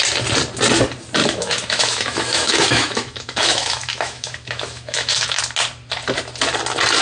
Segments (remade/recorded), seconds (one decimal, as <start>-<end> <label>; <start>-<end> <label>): 0.0-1.2 recorded; 1.2-5.4 remade; 5.4-7.0 recorded